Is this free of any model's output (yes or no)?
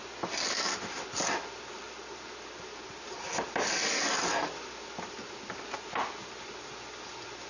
yes